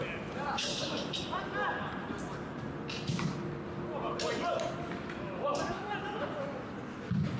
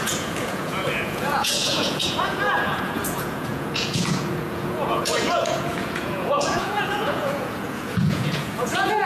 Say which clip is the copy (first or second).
second